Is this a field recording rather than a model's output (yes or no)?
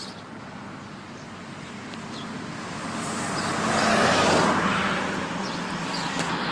yes